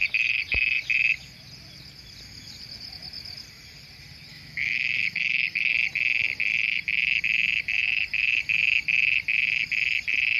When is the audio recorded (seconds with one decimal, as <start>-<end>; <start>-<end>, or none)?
0.0-4.3; 5.7-10.4